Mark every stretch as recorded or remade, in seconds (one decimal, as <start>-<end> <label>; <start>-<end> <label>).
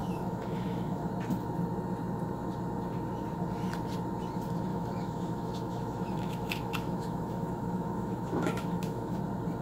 0.0-1.1 remade; 1.1-4.7 recorded; 4.7-9.2 remade; 9.2-9.6 recorded